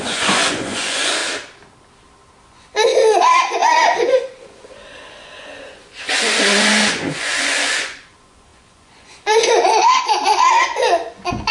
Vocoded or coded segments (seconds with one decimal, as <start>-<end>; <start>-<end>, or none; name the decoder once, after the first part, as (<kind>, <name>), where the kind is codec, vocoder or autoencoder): 0.0-1.2 (vocoder, Vocos); 2.4-11.5

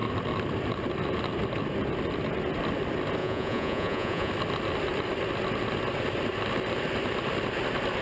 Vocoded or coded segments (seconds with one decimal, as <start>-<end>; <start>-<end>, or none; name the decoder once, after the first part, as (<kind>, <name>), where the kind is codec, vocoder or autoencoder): 3.2-4.3 (vocoder, Vocos)

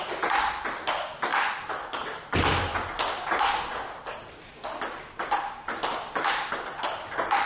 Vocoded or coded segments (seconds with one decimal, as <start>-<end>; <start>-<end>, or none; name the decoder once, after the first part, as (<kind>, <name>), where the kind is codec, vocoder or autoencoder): none

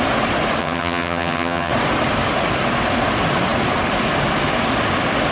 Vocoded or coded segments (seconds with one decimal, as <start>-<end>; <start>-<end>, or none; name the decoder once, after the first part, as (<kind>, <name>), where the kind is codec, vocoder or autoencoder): 0.6-1.7 (vocoder, HiFi-GAN)

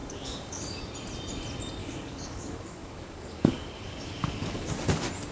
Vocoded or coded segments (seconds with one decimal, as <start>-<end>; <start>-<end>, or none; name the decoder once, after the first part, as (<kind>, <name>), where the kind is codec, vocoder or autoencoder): 0.0-0.8 (codec, DAC); 1.8-4.7

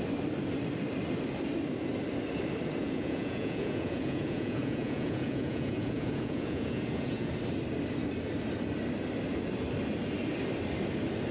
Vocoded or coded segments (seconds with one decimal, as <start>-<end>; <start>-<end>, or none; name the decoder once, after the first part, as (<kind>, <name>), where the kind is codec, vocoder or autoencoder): 2.8-7.3 (vocoder, Vocos)

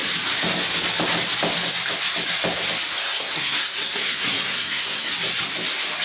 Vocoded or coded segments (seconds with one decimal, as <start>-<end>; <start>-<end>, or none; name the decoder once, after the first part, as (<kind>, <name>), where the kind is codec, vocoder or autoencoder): 3.0-5.1 (codec, SNAC)